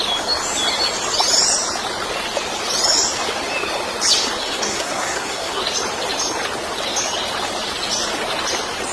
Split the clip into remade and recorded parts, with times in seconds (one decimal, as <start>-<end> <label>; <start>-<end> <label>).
0.0-4.4 recorded; 4.4-5.6 remade; 5.6-8.9 recorded